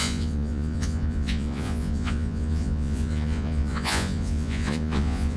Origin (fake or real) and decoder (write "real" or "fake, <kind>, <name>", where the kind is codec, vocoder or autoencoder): fake, vocoder, Vocos